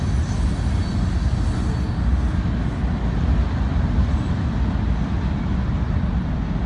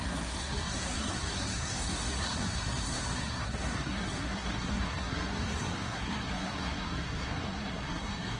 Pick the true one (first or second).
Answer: first